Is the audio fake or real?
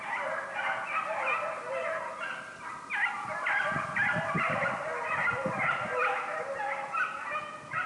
real